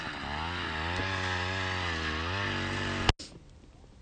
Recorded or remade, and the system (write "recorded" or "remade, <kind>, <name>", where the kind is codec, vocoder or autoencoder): recorded